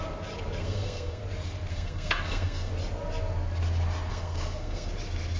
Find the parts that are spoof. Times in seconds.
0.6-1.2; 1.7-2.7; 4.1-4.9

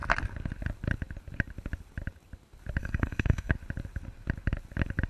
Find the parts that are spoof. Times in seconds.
2.8-3.5

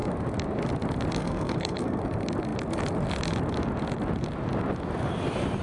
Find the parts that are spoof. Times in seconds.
1.2-2.0

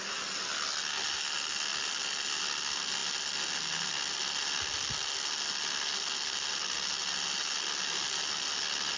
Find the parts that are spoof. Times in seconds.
none

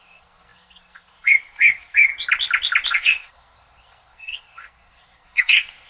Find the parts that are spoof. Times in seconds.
0.0-2.1; 2.9-5.9

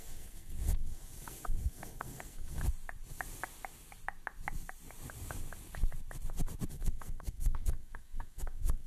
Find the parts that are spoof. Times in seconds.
0.0-2.6; 6.7-8.9

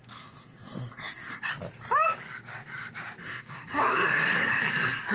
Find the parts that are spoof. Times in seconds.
0.0-1.5; 3.2-4.6